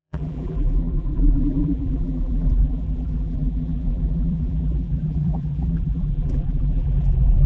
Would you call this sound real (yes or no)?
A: no